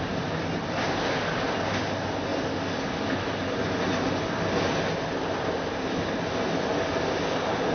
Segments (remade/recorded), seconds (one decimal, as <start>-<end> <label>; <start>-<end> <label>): 0.0-7.7 recorded